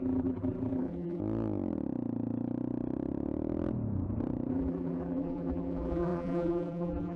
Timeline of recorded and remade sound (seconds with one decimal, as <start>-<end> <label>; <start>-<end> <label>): 0.0-1.2 remade; 1.2-4.5 recorded; 4.5-7.2 remade